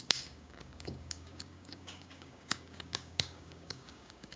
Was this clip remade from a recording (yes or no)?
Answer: yes